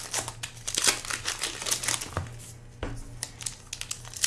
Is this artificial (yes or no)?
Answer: no